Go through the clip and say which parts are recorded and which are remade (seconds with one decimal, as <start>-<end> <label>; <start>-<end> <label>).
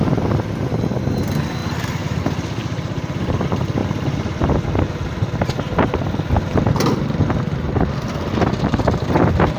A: 0.0-1.6 recorded; 1.6-2.2 remade; 2.2-2.6 recorded; 2.6-3.4 remade; 3.4-9.6 recorded